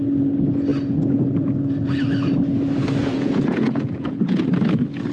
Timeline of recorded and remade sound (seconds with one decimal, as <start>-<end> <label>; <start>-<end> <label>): 0.0-3.0 recorded; 3.0-4.5 remade; 4.5-5.1 recorded